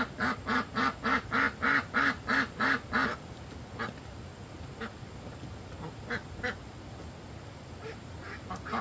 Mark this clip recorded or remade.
recorded